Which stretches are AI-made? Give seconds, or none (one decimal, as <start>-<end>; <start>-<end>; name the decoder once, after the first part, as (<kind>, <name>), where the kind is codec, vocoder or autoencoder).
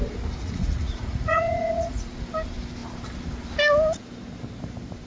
0.4-2.1 (vocoder, Vocos)